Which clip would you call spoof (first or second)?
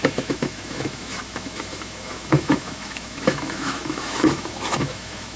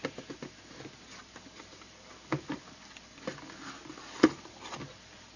first